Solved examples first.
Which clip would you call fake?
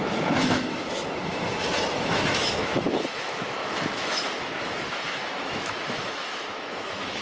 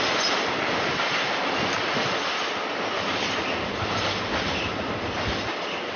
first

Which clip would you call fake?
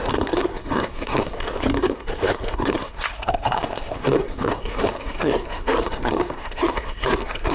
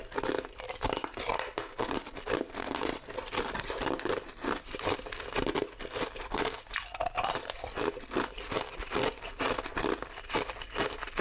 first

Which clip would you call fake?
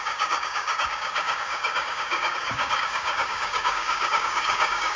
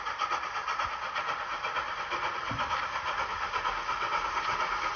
first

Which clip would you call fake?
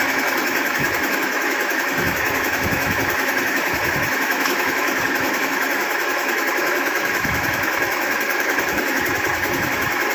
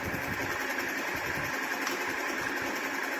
first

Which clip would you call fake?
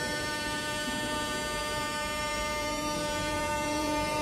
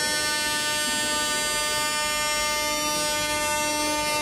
first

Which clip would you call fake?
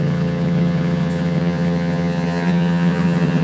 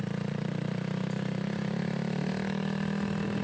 first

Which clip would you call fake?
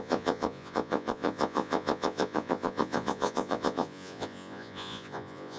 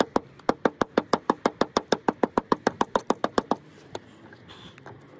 first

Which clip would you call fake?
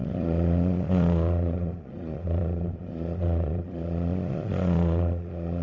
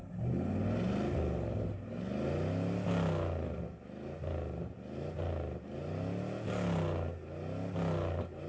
first